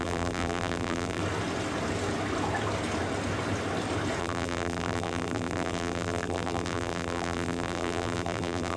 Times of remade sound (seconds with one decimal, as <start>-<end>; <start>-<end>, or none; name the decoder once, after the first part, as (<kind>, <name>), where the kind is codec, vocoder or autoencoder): 0.0-1.2 (vocoder, BigVGAN v2); 4.2-8.8